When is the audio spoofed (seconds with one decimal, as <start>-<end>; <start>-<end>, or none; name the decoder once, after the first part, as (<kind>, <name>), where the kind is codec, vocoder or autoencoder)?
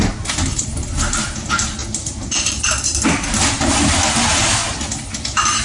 0.0-4.6 (vocoder, BigVGAN v2)